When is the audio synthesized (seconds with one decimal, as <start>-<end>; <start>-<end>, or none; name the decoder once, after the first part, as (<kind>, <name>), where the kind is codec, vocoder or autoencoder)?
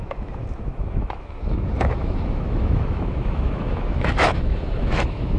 0.0-5.4 (autoencoder, DAC-VAE)